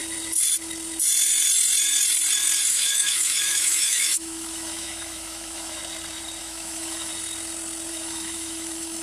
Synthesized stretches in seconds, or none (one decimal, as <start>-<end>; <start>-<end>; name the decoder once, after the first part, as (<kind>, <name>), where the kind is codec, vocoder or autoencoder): 2.7-5.8 (autoencoder, DAC-VAE); 6.4-7.1; 7.9-9.0